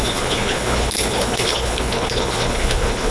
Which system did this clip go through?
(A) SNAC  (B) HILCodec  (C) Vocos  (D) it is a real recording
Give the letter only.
B